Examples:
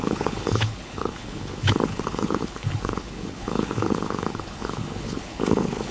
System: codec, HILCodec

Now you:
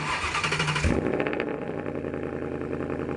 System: none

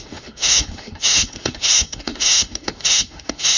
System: autoencoder, DAC-VAE